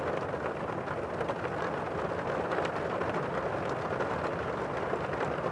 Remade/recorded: recorded